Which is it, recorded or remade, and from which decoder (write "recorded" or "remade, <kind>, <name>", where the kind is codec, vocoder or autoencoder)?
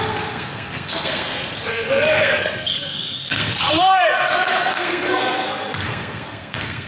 remade, codec, SNAC